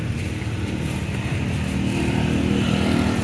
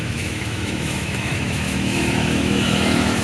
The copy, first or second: second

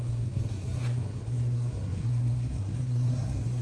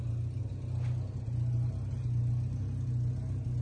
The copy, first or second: first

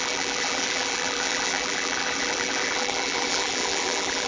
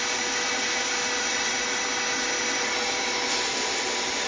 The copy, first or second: first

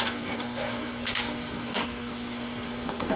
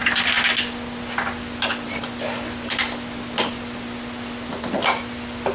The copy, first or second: first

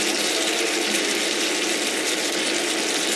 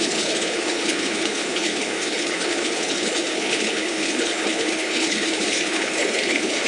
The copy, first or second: second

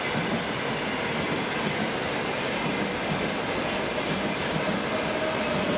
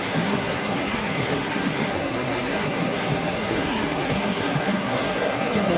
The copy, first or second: second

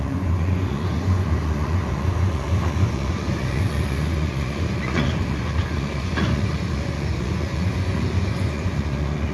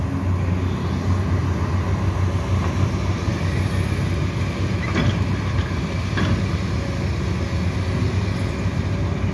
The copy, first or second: first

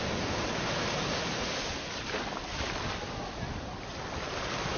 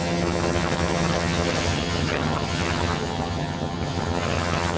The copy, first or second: second